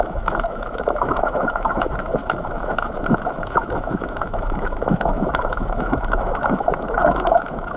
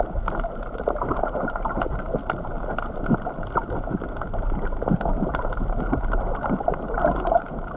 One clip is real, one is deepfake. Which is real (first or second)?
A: second